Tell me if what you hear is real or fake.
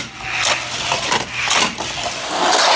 real